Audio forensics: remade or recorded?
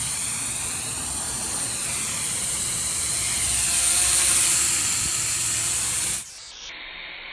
recorded